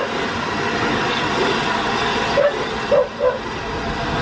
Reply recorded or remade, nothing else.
recorded